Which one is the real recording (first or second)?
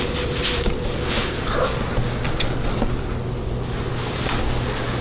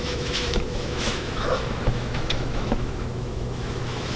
first